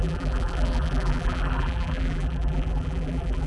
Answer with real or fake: fake